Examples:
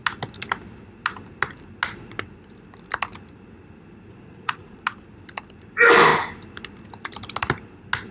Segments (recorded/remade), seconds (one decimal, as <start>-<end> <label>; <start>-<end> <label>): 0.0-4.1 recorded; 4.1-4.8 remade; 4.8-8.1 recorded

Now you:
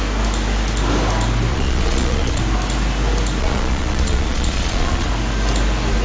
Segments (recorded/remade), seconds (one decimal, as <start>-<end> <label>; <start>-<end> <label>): 0.0-1.5 recorded; 1.5-2.4 remade; 2.4-3.4 recorded; 3.4-5.1 remade; 5.1-6.0 recorded

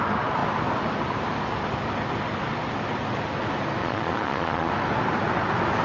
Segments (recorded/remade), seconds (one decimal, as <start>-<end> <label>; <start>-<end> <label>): 0.0-3.8 recorded; 3.8-4.7 remade; 4.7-5.8 recorded

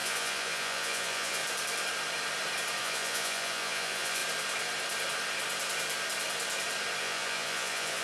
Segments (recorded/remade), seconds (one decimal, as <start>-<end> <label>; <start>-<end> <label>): 0.0-1.4 remade; 1.4-2.8 recorded; 2.8-4.2 remade; 4.2-7.0 recorded; 7.0-8.0 remade

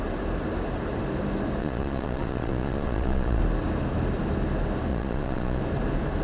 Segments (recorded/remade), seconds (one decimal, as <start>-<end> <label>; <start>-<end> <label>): 0.0-1.6 recorded; 1.6-3.4 remade; 3.4-4.9 recorded; 4.9-5.6 remade; 5.6-6.2 recorded

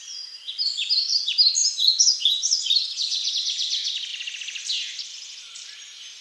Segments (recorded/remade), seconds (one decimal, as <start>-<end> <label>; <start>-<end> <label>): 0.0-1.6 recorded; 1.6-3.3 remade; 3.3-6.2 recorded

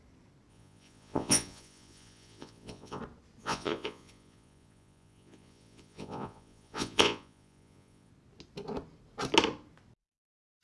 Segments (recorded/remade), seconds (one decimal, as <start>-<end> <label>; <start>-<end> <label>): 0.0-0.5 recorded; 0.5-3.0 remade; 3.0-3.4 recorded; 3.4-8.1 remade; 8.1-10.6 recorded

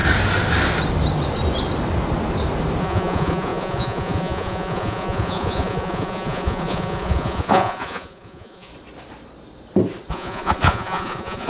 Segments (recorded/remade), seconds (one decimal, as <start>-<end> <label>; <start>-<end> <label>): 0.0-2.8 recorded; 2.8-8.7 remade; 8.7-10.1 recorded; 10.1-11.5 remade